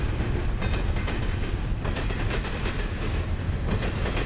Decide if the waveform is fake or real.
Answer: real